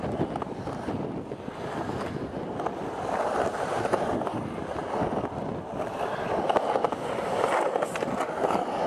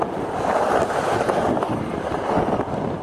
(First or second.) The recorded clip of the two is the first